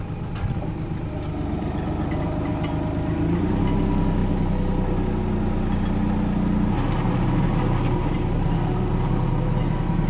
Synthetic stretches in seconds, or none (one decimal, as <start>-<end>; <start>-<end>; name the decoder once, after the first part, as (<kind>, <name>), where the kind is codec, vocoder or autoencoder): none